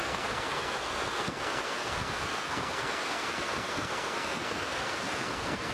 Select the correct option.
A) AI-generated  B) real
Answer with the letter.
A